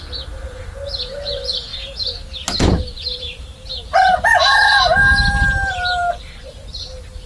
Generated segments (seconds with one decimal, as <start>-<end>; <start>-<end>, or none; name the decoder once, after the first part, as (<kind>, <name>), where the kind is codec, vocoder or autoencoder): 0.0-1.7 (vocoder, BigVGAN v2); 3.2-7.3